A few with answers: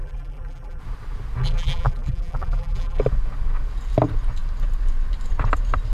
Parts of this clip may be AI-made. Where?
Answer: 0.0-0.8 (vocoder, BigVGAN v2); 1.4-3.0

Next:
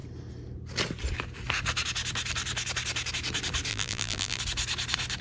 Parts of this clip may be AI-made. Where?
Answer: 3.7-4.4 (vocoder, BigVGAN v2)

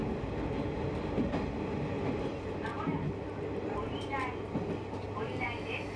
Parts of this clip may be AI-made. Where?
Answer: none

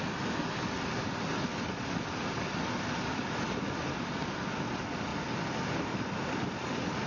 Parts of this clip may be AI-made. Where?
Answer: none

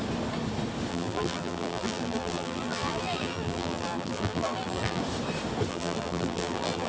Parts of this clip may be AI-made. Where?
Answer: 0.9-5.0 (vocoder, BigVGAN v2); 5.7-6.9

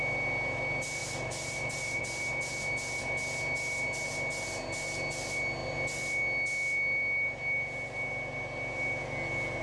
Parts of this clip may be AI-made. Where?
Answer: 1.0-2.0 (vocoder, BigVGAN v2)

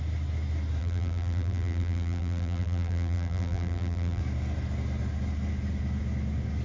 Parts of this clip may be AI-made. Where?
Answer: 0.8-4.2 (vocoder, BigVGAN v2)

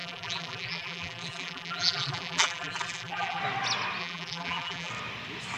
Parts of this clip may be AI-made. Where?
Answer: 0.0-3.4 (vocoder, BigVGAN v2); 4.0-4.9